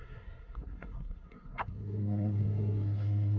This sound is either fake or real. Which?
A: fake